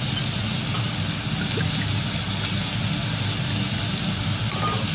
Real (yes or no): yes